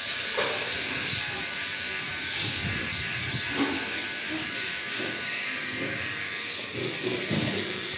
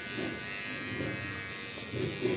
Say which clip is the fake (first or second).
first